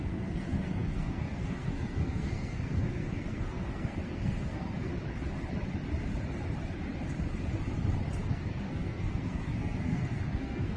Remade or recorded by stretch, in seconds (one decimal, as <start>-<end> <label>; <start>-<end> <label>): 0.0-4.9 remade; 4.9-8.3 recorded; 8.3-10.8 remade

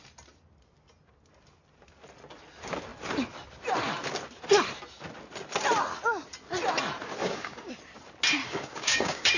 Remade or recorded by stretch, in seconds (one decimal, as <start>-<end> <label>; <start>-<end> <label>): 0.0-7.2 recorded; 7.2-7.7 remade; 7.7-8.4 recorded; 8.4-9.4 remade

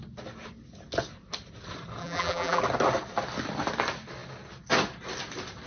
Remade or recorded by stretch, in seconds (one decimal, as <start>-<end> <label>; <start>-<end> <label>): 0.0-2.0 recorded; 2.0-2.6 remade; 2.6-5.7 recorded

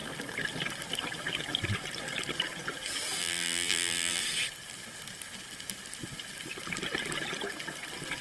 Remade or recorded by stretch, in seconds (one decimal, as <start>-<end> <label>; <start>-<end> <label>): 0.0-3.2 recorded; 3.2-4.2 remade; 4.2-8.2 recorded

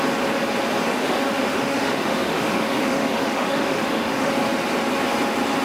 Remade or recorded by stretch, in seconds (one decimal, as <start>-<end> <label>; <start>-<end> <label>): 0.0-0.9 recorded; 0.9-4.3 remade; 4.3-5.6 recorded

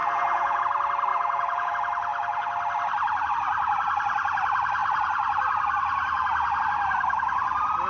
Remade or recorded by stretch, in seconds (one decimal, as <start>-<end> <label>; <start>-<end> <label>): 0.0-0.6 remade; 0.6-1.1 recorded; 1.1-1.7 remade; 1.7-7.9 recorded